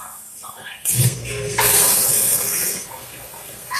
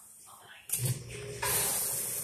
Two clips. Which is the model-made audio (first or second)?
first